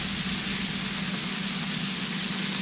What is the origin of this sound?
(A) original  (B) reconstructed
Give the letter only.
A